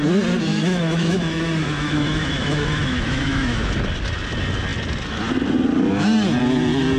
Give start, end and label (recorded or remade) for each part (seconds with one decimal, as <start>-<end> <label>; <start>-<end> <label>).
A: 0.0-0.5 recorded; 0.5-3.7 remade; 3.7-7.0 recorded

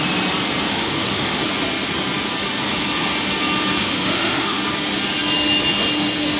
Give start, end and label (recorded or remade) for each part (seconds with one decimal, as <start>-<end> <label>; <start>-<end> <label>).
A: 0.0-0.7 recorded; 0.7-1.4 remade; 1.4-3.8 recorded; 3.8-4.6 remade; 4.6-6.4 recorded

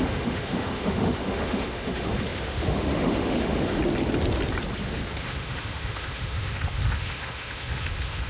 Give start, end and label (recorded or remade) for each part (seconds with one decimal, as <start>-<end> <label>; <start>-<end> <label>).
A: 0.0-3.8 remade; 3.8-4.8 recorded; 4.8-8.3 remade

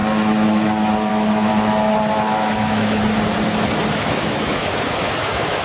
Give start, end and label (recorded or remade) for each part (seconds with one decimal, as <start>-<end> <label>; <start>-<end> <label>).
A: 0.0-1.1 recorded; 1.1-1.5 remade; 1.5-2.1 recorded; 2.1-3.0 remade; 3.0-4.0 recorded; 4.0-5.6 remade